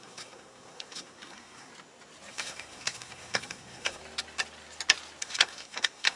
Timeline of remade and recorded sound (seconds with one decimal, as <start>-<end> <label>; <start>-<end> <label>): 0.0-1.7 remade; 1.7-2.3 recorded; 2.3-4.0 remade; 4.0-5.2 recorded; 5.2-6.2 remade